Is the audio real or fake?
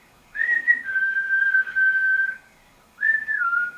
fake